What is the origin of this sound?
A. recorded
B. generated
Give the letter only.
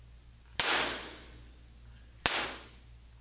A